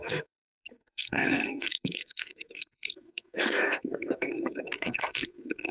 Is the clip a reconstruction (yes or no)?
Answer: yes